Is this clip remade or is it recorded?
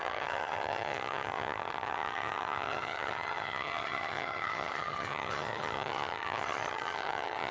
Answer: remade